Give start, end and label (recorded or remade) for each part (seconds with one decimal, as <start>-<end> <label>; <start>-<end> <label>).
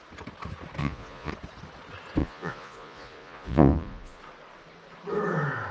0.0-0.8 recorded; 0.8-1.3 remade; 1.3-2.2 recorded; 2.2-4.2 remade; 4.2-5.7 recorded